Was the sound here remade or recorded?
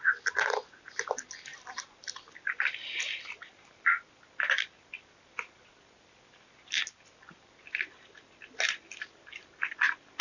recorded